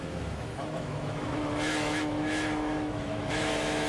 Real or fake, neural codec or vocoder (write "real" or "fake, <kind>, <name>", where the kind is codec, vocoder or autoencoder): fake, autoencoder, DAC-VAE